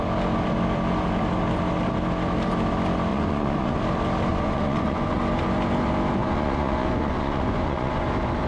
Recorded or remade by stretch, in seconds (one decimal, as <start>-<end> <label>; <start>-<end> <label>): 0.0-3.1 recorded; 3.1-3.8 remade; 3.8-4.3 recorded; 4.3-5.2 remade; 5.2-6.2 recorded; 6.2-8.1 remade; 8.1-8.5 recorded